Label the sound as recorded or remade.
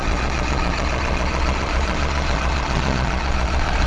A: remade